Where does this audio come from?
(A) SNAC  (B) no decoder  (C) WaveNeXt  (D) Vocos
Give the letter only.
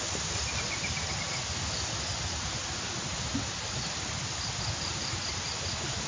B